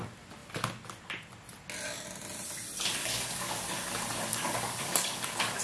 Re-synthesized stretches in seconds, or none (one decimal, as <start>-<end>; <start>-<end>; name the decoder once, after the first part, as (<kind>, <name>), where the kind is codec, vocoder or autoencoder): 3.0-3.6 (codec, DAC); 4.3-5.6